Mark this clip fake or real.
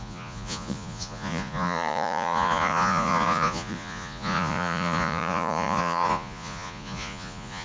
fake